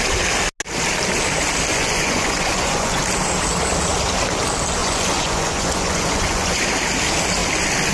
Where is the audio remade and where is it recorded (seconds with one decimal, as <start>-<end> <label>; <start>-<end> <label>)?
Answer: 0.0-1.7 recorded; 1.7-3.0 remade; 3.0-4.8 recorded; 4.8-6.6 remade; 6.6-7.9 recorded